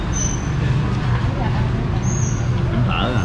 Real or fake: real